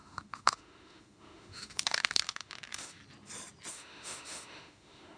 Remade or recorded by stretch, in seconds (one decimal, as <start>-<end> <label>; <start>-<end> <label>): 0.0-3.0 remade; 3.0-3.7 recorded; 3.7-5.2 remade